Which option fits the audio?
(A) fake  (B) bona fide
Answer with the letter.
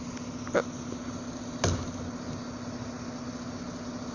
B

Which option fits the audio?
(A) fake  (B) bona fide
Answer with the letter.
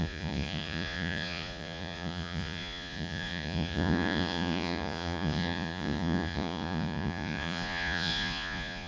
A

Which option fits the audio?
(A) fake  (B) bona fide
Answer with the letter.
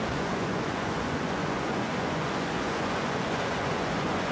A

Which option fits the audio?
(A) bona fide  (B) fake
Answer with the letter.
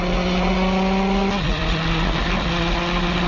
A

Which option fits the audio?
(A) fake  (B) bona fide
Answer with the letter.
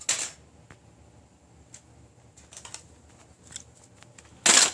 B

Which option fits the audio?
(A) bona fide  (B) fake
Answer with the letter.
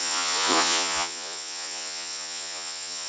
B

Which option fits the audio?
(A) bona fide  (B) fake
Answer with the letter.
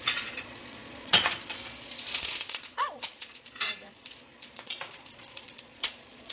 B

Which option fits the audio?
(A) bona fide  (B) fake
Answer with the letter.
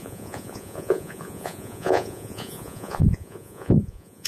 B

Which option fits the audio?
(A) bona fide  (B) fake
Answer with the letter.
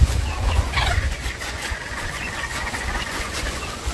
B